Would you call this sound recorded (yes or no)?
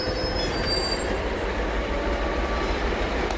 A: yes